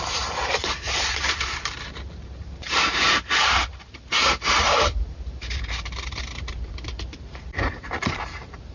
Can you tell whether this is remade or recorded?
remade